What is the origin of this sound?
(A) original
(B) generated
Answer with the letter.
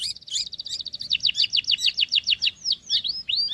A